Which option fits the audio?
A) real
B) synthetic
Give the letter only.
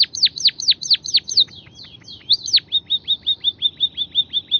A